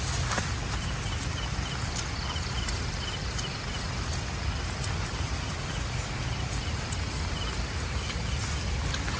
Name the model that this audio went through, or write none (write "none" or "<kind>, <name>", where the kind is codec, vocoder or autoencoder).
none